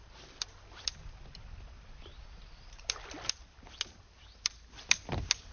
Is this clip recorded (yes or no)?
yes